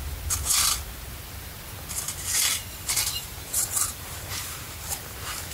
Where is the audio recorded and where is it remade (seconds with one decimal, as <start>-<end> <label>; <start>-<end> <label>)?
0.0-2.5 recorded; 2.5-4.3 remade; 4.3-5.5 recorded